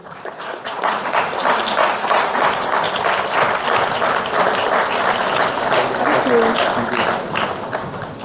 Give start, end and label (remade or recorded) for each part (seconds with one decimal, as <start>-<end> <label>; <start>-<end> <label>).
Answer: 0.0-1.1 remade; 1.1-1.8 recorded; 1.8-2.4 remade; 2.4-8.2 recorded